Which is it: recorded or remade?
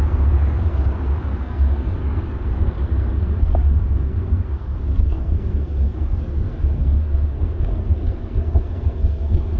remade